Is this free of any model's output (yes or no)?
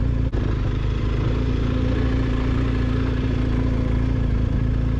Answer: yes